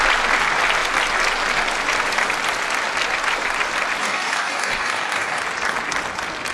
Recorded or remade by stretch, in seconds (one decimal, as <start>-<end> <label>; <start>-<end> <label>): 0.0-4.0 recorded; 4.0-5.4 remade; 5.4-6.5 recorded